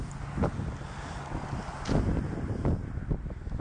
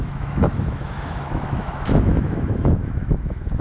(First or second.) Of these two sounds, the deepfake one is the second